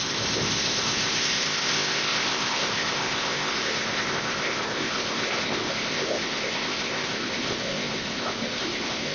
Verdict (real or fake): fake